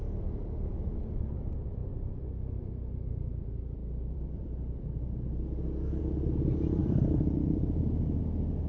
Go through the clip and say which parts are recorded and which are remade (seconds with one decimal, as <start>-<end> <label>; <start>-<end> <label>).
0.0-3.8 recorded; 3.8-6.0 remade; 6.0-6.8 recorded; 6.8-8.2 remade; 8.2-8.7 recorded